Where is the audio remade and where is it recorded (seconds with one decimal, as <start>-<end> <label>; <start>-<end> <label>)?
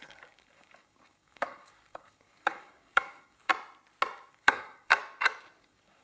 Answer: 0.0-3.5 remade; 3.5-4.3 recorded; 4.3-5.0 remade; 5.0-5.6 recorded; 5.6-6.0 remade